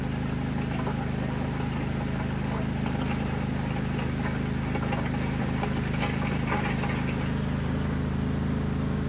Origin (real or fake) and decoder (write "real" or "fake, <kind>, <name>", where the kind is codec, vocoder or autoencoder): real